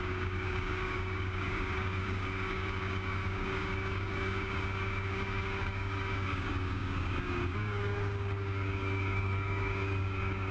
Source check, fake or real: fake